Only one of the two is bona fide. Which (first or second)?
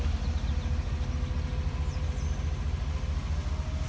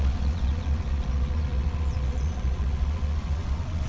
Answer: first